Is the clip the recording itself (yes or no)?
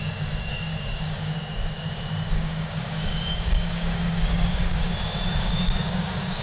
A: no